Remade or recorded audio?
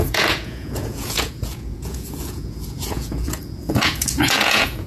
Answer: remade